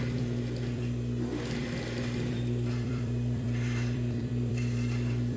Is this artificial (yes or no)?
yes